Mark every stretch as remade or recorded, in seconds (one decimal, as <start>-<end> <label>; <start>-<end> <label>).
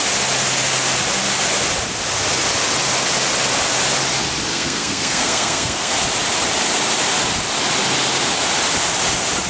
0.0-4.5 recorded; 4.5-5.9 remade; 5.9-9.5 recorded